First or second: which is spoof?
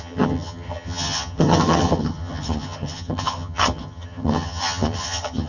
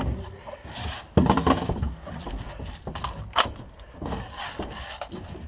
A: first